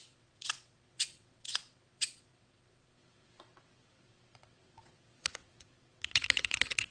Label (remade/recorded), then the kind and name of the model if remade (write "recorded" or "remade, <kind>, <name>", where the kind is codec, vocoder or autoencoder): remade, vocoder, WaveNeXt